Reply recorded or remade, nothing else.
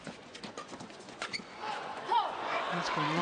remade